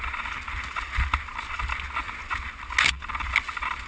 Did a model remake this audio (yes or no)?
no